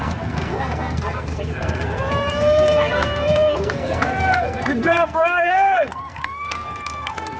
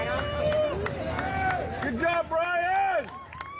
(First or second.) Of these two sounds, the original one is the second